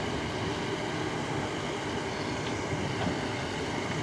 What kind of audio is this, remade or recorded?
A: remade